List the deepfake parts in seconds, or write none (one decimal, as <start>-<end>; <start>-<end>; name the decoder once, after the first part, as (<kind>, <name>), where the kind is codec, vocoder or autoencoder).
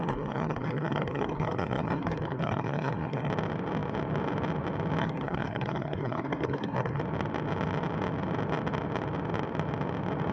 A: 0.0-3.3 (codec, SNAC); 5.0-7.0